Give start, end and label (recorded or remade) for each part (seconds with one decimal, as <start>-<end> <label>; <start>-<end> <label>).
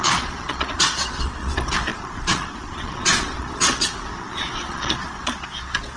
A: 0.0-6.0 remade